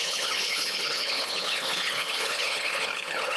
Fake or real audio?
fake